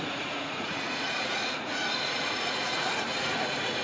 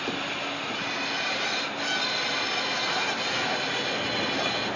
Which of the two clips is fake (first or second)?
first